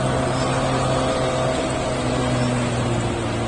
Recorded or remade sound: recorded